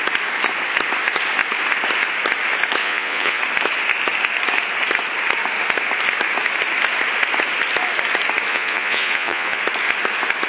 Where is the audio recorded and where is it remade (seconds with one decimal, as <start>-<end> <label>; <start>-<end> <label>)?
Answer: 0.0-2.8 recorded; 2.8-3.4 remade; 3.4-8.5 recorded; 8.5-9.6 remade; 9.6-10.5 recorded